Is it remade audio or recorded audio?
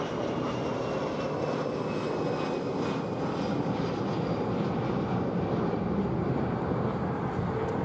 recorded